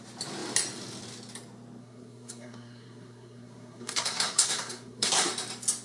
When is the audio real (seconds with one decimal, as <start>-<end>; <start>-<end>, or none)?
0.0-1.8; 5.3-5.8